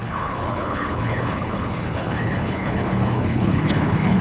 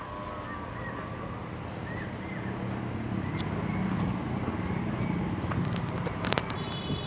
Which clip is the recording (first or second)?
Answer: second